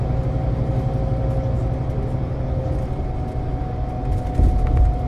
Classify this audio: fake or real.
real